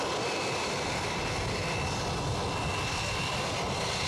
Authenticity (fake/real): real